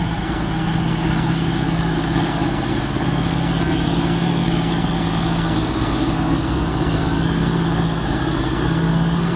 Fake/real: fake